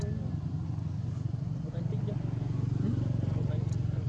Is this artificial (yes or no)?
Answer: no